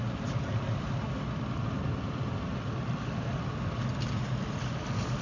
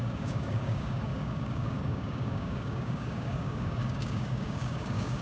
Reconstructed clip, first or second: second